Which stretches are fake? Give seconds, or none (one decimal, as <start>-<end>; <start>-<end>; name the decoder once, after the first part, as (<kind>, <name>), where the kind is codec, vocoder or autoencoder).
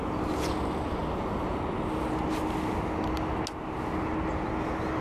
none